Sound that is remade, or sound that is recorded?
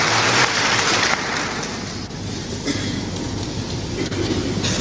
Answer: recorded